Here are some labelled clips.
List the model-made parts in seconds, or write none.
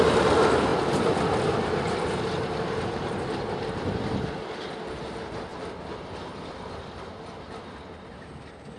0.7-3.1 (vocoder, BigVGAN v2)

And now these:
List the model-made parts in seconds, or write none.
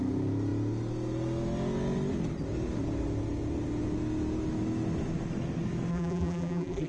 5.9-6.9 (vocoder, BigVGAN v2)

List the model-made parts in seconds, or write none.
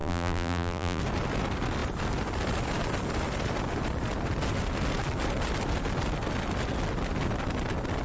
0.0-1.0 (vocoder, BigVGAN v2)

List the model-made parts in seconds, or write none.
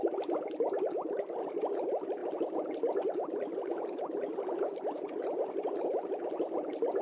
0.0-2.2 (vocoder, BigVGAN v2); 5.4-7.0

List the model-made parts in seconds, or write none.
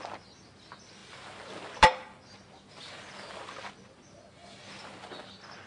none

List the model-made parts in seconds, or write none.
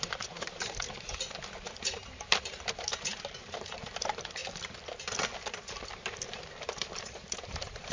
0.0-4.4 (vocoder, BigVGAN v2); 6.6-7.9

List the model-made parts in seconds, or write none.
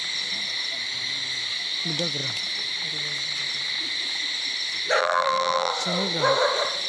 5.0-5.7 (vocoder, BigVGAN v2)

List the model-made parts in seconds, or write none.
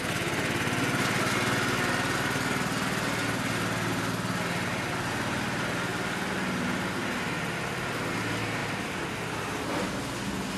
8.6-9.4 (vocoder, BigVGAN v2)